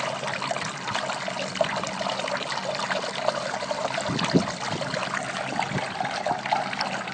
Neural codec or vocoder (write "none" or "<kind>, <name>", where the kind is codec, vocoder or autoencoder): none